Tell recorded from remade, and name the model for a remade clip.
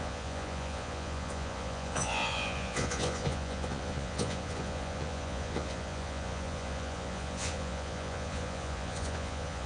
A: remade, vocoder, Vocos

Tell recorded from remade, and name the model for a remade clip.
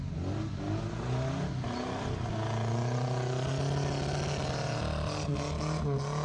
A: recorded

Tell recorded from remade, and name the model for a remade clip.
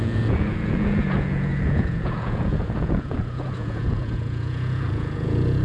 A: remade, vocoder, Vocos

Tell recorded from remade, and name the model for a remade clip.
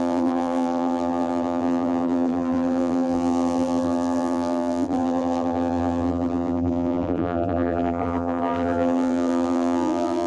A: remade, vocoder, BigVGAN v2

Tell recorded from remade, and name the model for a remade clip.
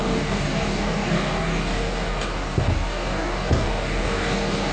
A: remade, codec, DAC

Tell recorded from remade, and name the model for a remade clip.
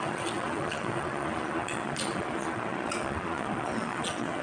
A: remade, vocoder, Vocos